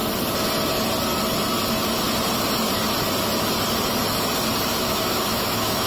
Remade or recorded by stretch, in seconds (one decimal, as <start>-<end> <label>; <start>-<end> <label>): 0.0-4.7 recorded; 4.7-5.9 remade